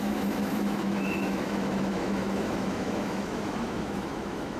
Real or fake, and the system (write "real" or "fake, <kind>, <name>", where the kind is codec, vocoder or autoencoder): fake, autoencoder, DAC-VAE